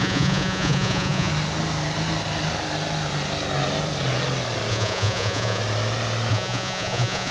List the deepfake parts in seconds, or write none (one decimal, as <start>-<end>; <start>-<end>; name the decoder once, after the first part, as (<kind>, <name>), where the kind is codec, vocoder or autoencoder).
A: 0.0-1.3 (vocoder, Vocos); 4.7-5.6; 6.3-7.3